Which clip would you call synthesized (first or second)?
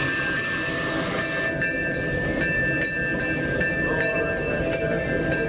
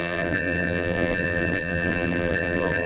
second